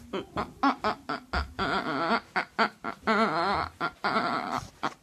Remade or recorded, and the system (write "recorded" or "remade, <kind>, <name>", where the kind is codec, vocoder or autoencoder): recorded